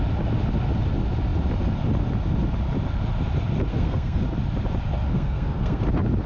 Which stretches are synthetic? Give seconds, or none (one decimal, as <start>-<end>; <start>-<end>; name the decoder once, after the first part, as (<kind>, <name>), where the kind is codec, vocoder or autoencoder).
3.7-4.2 (codec, SNAC); 5.1-5.8